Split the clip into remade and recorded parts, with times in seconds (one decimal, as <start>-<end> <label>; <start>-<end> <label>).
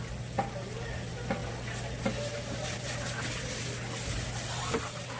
0.0-5.2 recorded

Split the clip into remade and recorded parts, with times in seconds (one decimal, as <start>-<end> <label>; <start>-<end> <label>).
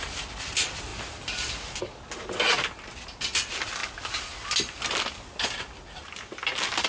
0.0-6.9 recorded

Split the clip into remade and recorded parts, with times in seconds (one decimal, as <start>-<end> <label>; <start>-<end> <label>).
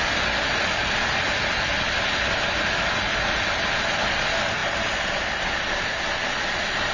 0.0-6.9 recorded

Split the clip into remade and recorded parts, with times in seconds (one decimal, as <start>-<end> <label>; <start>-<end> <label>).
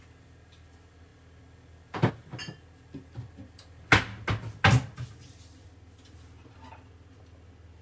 0.0-7.8 recorded